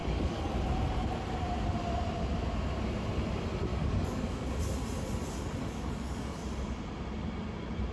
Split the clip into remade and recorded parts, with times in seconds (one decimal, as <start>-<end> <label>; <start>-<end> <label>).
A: 0.0-0.5 remade; 0.5-3.7 recorded; 3.7-4.5 remade; 4.5-5.6 recorded; 5.6-6.4 remade; 6.4-7.9 recorded